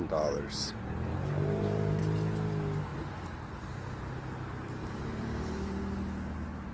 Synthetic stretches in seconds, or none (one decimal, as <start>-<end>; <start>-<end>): 1.1-2.0; 2.9-3.7; 4.8-5.8